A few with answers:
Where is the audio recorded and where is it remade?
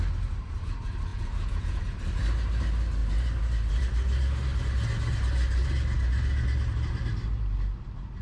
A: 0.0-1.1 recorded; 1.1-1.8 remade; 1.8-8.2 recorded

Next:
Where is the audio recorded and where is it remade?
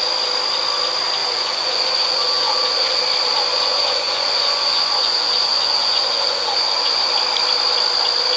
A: 0.0-1.2 recorded; 1.2-3.0 remade; 3.0-3.5 recorded; 3.5-7.1 remade; 7.1-8.4 recorded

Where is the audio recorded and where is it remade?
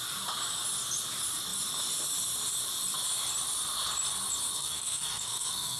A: 0.0-4.5 recorded; 4.5-5.8 remade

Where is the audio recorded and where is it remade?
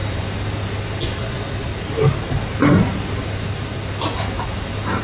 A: 0.0-1.2 recorded; 1.2-1.7 remade; 1.7-5.0 recorded